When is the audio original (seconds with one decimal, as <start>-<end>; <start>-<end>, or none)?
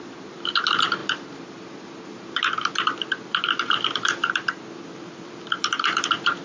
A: none